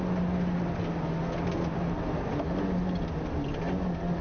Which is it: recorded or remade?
recorded